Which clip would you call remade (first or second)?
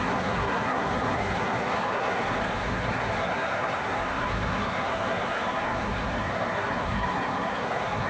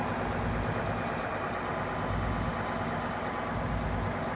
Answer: first